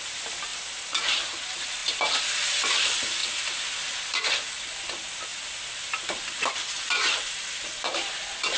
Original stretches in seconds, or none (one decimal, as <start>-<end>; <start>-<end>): none